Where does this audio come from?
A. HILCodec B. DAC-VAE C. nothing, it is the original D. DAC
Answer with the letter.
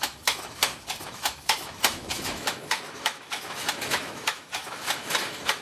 B